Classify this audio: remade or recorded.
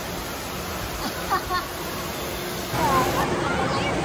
recorded